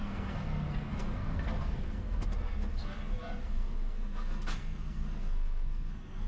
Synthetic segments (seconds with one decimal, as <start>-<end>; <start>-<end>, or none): 0.0-6.3